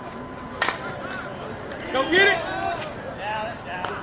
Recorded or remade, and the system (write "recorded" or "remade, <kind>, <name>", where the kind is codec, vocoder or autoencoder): recorded